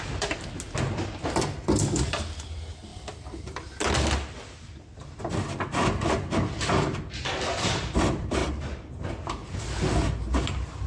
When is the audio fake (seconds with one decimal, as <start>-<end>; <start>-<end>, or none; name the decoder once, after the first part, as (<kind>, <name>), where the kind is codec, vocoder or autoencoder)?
8.4-8.9 (vocoder, BigVGAN v2)